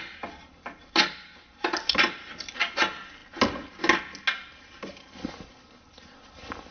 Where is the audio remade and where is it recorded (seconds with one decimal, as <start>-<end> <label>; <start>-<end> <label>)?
0.0-6.7 recorded